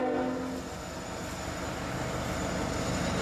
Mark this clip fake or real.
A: real